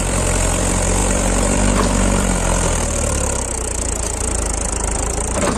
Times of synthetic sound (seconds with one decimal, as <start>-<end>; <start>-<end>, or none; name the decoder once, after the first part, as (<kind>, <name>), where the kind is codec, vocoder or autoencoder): 0.0-5.6 (vocoder, BigVGAN v2)